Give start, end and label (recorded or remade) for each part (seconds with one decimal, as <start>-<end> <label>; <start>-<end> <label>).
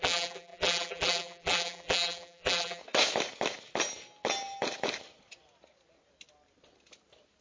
0.0-2.8 remade; 2.8-7.4 recorded